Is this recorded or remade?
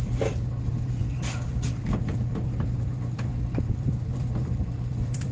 remade